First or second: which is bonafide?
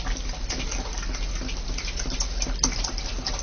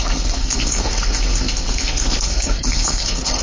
first